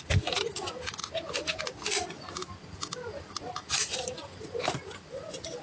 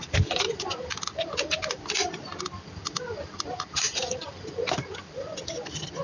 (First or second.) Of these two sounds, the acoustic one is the first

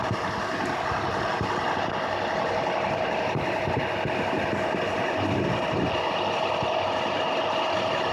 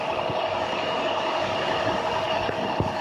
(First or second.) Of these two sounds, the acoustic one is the first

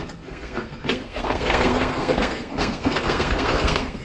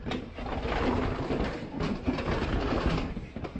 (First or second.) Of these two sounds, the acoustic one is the second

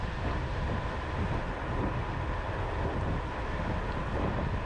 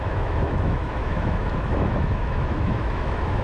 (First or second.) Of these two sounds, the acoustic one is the first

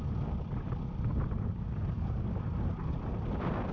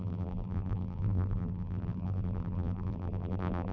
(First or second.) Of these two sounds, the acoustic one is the first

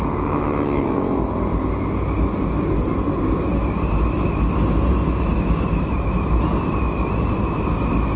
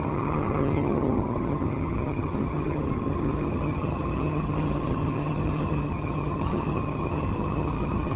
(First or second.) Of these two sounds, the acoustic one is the first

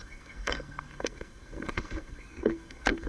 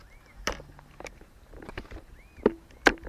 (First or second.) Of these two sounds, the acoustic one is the second